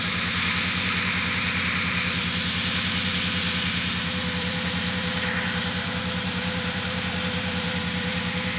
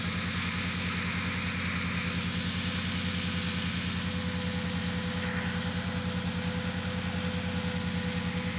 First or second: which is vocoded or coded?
first